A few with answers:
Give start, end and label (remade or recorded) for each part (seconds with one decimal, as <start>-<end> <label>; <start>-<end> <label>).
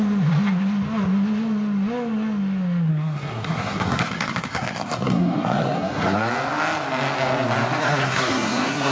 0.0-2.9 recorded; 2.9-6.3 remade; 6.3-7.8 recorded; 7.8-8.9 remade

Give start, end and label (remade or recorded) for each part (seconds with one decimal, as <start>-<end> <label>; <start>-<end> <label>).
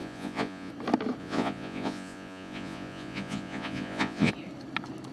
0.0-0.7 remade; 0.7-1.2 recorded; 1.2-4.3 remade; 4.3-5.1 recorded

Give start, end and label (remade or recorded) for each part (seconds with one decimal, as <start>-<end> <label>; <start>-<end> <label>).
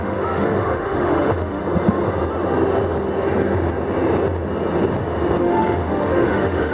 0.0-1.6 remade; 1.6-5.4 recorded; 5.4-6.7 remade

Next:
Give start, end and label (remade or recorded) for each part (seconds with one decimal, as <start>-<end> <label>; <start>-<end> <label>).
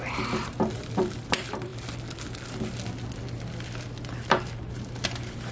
0.0-1.7 remade; 1.7-4.0 recorded; 4.0-5.5 remade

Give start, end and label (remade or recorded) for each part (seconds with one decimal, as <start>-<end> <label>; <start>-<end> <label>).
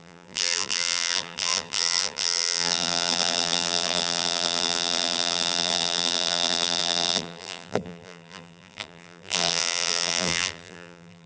0.0-11.3 remade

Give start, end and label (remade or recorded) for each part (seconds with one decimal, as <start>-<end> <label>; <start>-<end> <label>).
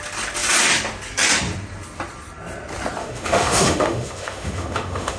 0.0-3.0 recorded; 3.0-5.2 remade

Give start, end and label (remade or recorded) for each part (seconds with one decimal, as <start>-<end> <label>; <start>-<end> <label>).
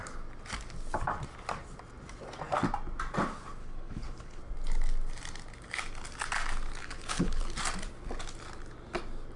0.0-3.6 recorded; 3.6-4.4 remade; 4.4-6.8 recorded; 6.8-7.4 remade; 7.4-9.4 recorded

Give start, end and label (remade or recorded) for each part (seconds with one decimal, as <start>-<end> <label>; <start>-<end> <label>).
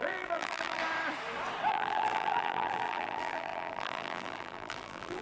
0.0-0.8 remade; 0.8-1.7 recorded; 1.7-5.2 remade